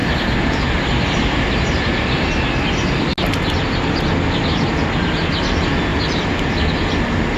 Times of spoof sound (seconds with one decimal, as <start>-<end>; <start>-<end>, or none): 0.0-2.4; 5.9-6.6